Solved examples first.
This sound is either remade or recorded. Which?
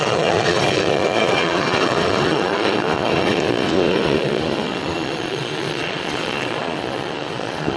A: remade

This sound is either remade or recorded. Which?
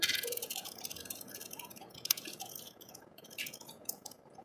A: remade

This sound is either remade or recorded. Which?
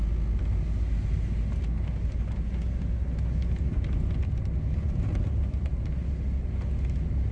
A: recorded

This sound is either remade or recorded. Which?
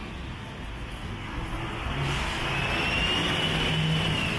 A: recorded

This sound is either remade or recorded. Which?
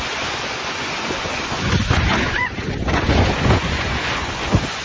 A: remade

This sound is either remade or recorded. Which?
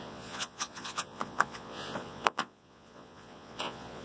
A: remade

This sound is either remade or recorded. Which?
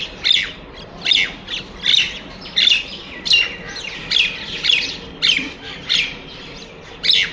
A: recorded